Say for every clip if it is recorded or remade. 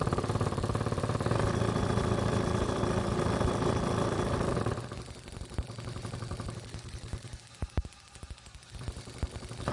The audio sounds remade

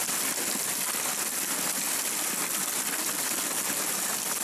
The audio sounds recorded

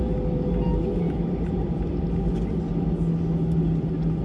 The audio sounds recorded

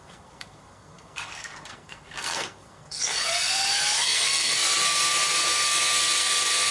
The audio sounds remade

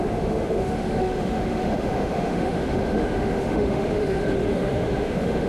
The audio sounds remade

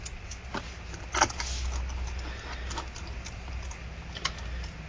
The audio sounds recorded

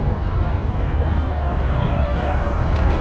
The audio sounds remade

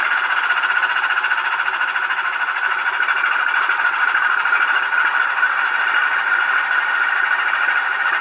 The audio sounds recorded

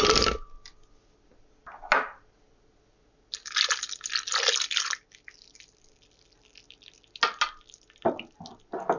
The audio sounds recorded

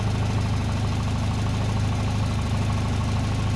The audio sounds recorded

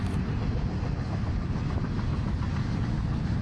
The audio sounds recorded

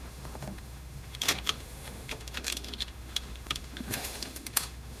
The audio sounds remade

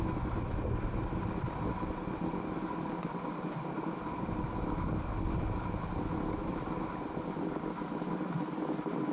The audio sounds recorded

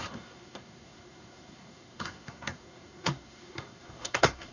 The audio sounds remade